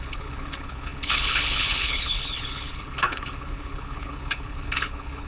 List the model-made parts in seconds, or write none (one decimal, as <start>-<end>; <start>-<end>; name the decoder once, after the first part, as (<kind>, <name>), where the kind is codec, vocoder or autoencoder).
0.0-5.3 (codec, HILCodec)